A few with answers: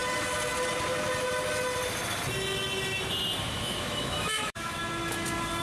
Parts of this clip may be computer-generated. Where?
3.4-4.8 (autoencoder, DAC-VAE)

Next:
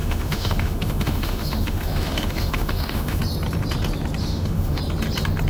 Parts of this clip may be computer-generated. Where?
0.0-3.2 (autoencoder, DAC-VAE); 4.2-4.8

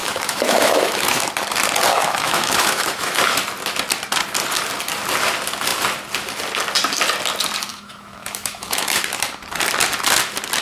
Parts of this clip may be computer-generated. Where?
0.0-1.3 (autoencoder, DAC-VAE); 1.9-3.2; 7.7-9.0

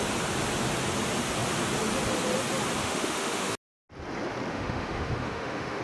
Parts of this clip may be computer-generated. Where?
2.8-3.5 (autoencoder, DAC-VAE); 4.5-5.8

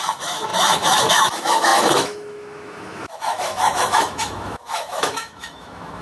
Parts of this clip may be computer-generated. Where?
0.0-6.0 (autoencoder, DAC-VAE)

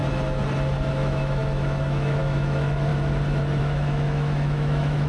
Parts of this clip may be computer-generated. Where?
0.9-2.9 (autoencoder, DAC-VAE); 3.6-5.1